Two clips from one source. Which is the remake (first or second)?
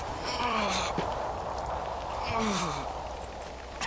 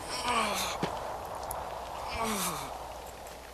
first